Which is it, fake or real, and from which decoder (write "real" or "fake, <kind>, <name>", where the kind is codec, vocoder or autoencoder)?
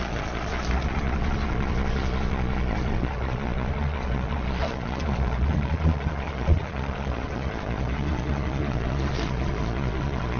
fake, vocoder, Vocos